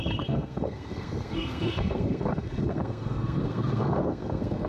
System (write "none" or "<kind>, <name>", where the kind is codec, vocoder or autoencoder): codec, SNAC